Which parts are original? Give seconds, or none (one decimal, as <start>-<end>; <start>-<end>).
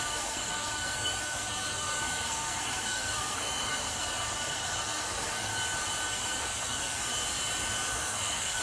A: 5.5-6.1; 7.1-7.9